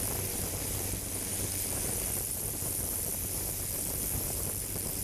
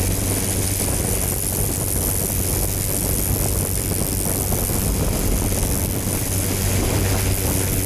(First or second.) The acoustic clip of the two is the second